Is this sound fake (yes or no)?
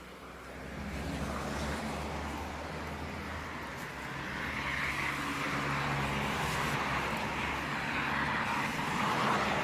no